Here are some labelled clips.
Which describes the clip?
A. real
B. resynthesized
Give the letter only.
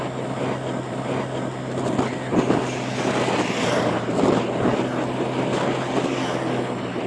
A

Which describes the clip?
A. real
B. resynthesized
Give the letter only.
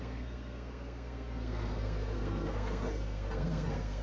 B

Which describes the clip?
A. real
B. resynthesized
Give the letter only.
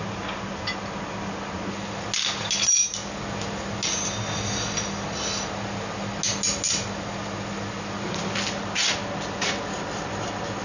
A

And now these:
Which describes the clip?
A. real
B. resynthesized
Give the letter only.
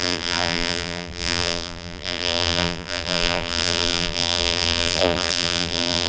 B